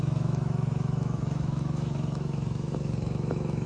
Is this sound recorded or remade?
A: remade